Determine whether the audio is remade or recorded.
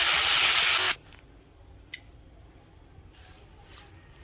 recorded